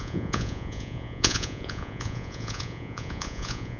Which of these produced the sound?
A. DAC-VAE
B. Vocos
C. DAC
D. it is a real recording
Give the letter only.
B